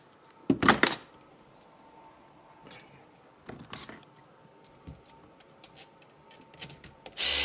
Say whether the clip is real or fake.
real